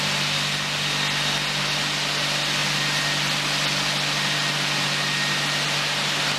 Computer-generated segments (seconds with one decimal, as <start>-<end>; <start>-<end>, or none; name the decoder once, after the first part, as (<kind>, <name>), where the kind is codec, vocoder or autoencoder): none